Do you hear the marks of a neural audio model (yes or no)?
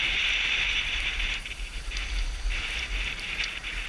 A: yes